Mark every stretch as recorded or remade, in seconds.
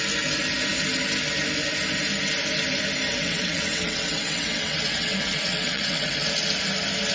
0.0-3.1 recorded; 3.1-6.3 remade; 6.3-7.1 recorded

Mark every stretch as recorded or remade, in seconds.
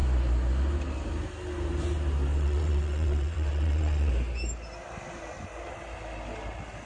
0.0-2.3 recorded; 2.3-4.1 remade; 4.1-6.9 recorded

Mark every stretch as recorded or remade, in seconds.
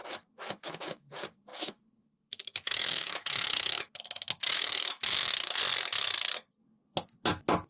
0.0-1.1 remade; 1.1-1.5 recorded; 1.5-5.6 remade; 5.6-7.7 recorded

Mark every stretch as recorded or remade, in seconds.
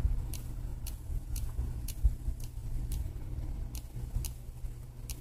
0.0-0.7 recorded; 0.7-2.0 remade; 2.0-5.2 recorded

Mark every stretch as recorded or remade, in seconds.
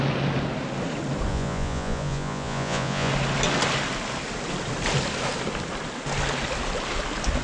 0.0-1.3 recorded; 1.3-3.1 remade; 3.1-7.4 recorded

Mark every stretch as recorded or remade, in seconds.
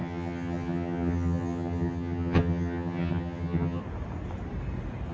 0.0-3.8 remade; 3.8-5.1 recorded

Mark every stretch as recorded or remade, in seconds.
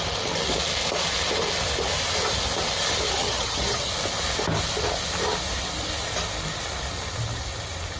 0.0-3.2 recorded; 3.2-3.9 remade; 3.9-8.0 recorded